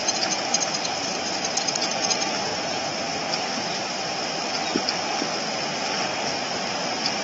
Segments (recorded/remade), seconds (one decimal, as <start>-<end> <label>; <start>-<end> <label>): 0.0-2.5 recorded; 2.5-4.3 remade; 4.3-7.2 recorded